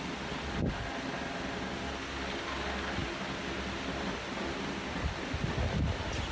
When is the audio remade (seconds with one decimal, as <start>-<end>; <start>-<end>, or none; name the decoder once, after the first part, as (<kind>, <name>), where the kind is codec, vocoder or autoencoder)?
none